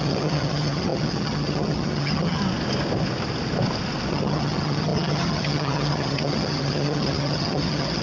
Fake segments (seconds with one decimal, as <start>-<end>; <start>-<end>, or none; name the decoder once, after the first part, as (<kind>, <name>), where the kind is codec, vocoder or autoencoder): 0.0-2.4 (vocoder, HiFi-GAN); 4.1-8.0